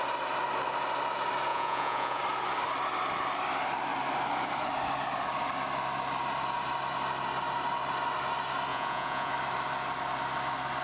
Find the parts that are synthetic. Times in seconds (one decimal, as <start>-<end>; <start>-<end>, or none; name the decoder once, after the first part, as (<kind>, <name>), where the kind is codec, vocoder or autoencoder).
1.5-2.2 (vocoder, Vocos); 8.7-9.3